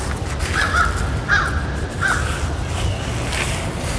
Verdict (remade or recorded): recorded